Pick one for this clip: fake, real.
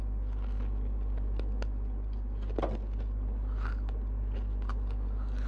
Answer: real